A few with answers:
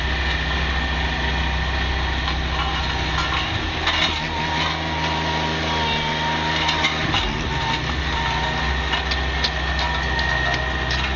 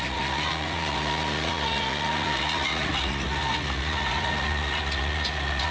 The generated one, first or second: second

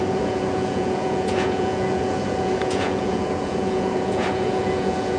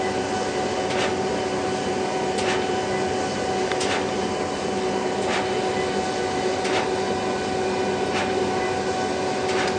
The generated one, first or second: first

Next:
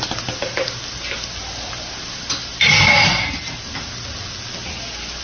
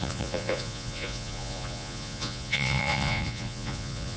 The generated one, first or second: second